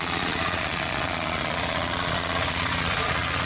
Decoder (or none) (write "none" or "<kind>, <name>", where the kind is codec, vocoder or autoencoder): vocoder, Vocos